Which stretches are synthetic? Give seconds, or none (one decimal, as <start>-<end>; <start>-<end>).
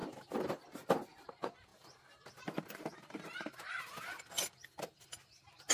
none